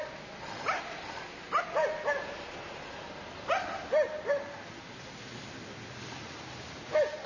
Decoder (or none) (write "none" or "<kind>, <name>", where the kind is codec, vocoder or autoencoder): none